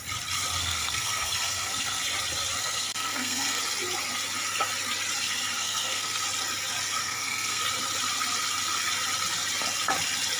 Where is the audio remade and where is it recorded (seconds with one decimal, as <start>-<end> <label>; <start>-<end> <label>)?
0.0-0.6 recorded; 0.6-2.0 remade; 2.0-2.6 recorded; 2.6-3.6 remade; 3.6-5.6 recorded; 5.6-6.2 remade; 6.2-7.0 recorded; 7.0-7.6 remade; 7.6-10.4 recorded

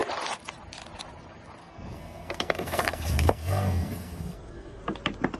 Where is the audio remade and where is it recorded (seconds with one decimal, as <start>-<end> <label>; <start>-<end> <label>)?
0.0-1.6 recorded; 1.6-4.8 remade; 4.8-5.4 recorded

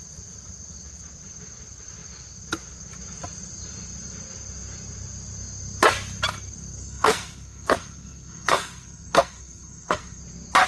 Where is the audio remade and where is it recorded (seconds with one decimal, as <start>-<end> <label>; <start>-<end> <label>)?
0.0-6.8 recorded; 6.8-10.2 remade; 10.2-10.7 recorded

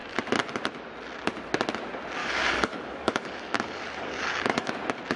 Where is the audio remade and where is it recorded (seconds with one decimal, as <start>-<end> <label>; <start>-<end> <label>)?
0.0-2.2 recorded; 2.2-4.7 remade; 4.7-5.2 recorded

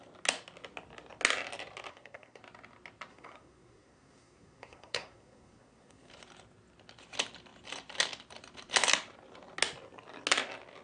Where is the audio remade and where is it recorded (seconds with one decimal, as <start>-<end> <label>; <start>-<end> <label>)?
0.0-1.9 recorded; 1.9-2.4 remade; 2.4-3.1 recorded; 3.1-6.1 remade; 6.1-10.8 recorded

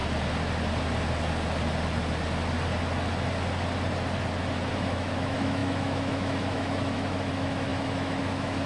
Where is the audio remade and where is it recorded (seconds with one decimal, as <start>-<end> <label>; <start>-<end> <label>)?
0.0-4.7 recorded; 4.7-8.7 remade

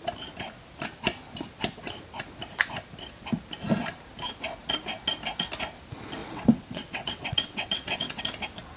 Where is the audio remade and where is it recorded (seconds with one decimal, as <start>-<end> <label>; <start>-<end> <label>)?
0.0-6.2 recorded; 6.2-8.2 remade; 8.2-8.8 recorded

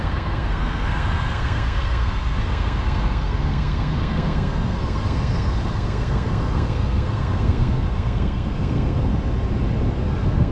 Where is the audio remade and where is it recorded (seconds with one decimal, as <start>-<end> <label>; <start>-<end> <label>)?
0.0-9.1 remade; 9.1-10.0 recorded; 10.0-10.5 remade